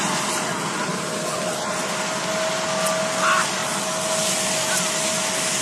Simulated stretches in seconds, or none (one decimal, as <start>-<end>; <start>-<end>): none